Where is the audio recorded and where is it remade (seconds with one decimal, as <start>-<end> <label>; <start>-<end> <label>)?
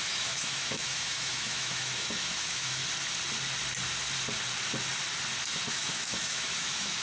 0.0-2.8 remade; 2.8-5.7 recorded; 5.7-7.0 remade